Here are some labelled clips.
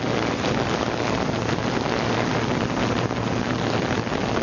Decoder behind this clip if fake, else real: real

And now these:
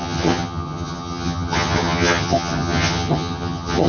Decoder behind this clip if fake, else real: fake, vocoder, HiFi-GAN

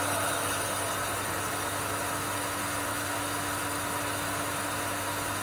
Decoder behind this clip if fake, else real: real